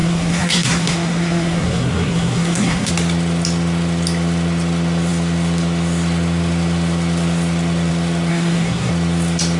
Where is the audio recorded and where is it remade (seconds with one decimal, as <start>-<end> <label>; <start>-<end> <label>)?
0.0-2.9 remade; 2.9-8.3 recorded; 8.3-8.9 remade; 8.9-9.6 recorded